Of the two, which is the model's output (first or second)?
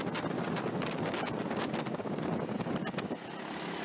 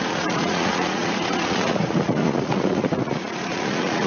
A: second